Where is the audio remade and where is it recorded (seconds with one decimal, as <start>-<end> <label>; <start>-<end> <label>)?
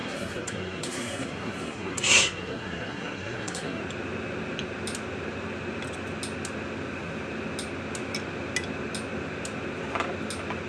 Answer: 0.0-3.8 remade; 3.8-10.7 recorded